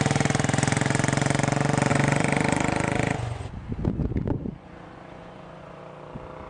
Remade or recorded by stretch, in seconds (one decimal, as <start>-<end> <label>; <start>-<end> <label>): 0.0-1.9 recorded; 1.9-5.8 remade; 5.8-6.5 recorded

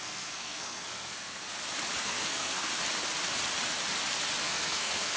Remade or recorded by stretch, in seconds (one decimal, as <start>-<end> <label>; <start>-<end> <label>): 0.0-1.4 remade; 1.4-2.0 recorded; 2.0-2.7 remade; 2.7-4.4 recorded; 4.4-5.2 remade